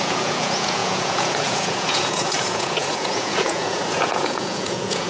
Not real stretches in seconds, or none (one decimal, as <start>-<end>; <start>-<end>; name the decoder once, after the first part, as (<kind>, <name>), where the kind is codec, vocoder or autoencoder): 0.0-5.1 (vocoder, Vocos)